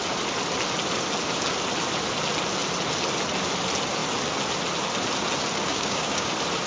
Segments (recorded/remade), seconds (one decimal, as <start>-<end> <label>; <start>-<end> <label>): 0.0-5.7 recorded; 5.7-6.3 remade; 6.3-6.7 recorded